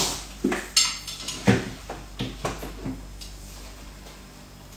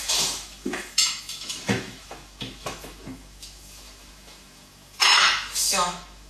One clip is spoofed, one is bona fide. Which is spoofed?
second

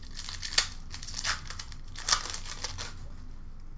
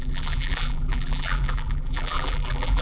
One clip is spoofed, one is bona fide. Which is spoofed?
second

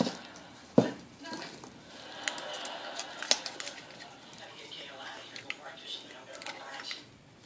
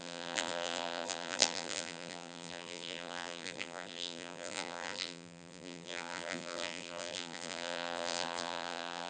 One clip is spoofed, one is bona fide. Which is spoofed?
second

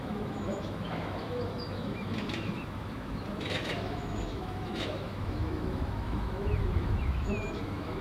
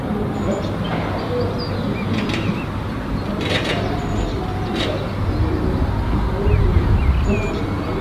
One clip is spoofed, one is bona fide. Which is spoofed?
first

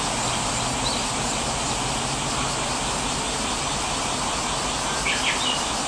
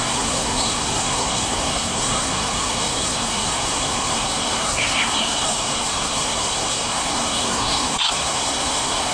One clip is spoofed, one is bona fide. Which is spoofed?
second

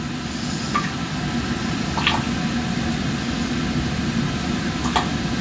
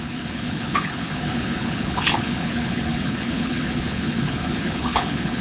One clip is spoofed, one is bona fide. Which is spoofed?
second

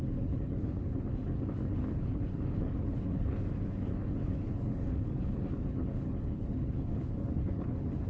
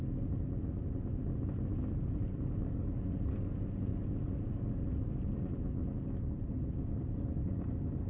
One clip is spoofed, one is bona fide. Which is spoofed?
first